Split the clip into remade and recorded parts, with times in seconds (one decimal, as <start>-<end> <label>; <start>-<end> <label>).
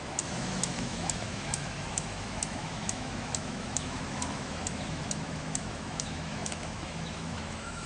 0.0-7.9 remade